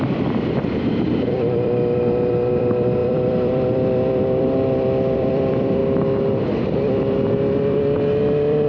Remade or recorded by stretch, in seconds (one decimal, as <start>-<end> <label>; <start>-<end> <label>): 0.0-5.8 remade; 5.8-8.2 recorded; 8.2-8.7 remade